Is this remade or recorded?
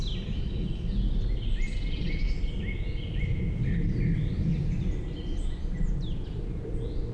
recorded